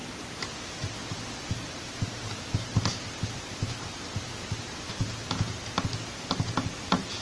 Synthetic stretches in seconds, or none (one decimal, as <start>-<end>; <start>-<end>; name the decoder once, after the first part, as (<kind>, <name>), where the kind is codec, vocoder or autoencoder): 1.5-5.2 (vocoder, BigVGAN v2)